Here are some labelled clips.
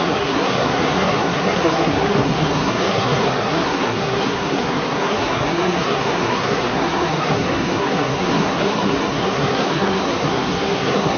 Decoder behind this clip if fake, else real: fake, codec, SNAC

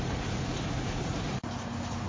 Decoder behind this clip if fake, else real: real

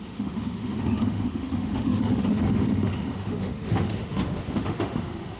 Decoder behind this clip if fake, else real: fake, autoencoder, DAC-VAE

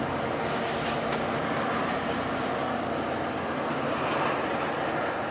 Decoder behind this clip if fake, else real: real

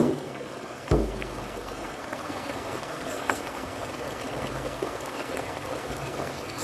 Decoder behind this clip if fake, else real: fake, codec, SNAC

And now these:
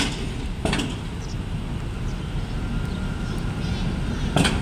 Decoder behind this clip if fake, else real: real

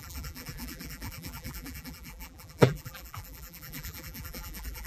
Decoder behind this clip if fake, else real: fake, vocoder, BigVGAN v2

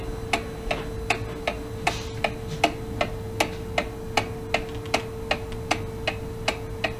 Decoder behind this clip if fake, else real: real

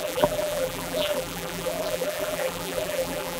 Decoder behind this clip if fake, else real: fake, vocoder, BigVGAN v2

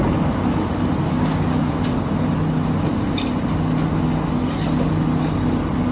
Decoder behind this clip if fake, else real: real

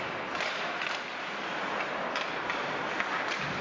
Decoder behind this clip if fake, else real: real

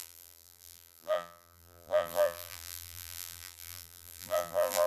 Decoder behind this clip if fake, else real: fake, vocoder, BigVGAN v2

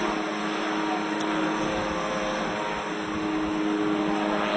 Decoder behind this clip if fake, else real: real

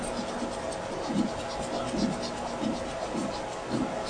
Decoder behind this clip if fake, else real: real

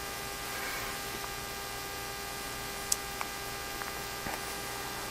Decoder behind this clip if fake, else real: real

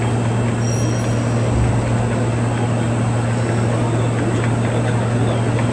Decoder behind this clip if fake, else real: real